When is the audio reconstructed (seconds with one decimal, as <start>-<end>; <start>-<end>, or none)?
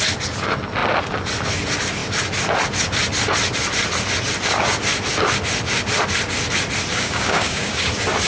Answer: 6.9-7.9